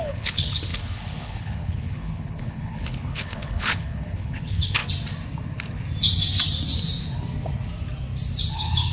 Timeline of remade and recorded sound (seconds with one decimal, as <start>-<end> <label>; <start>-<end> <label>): 0.0-4.8 remade; 4.8-8.5 recorded; 8.5-8.9 remade